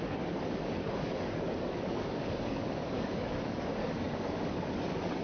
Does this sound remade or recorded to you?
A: remade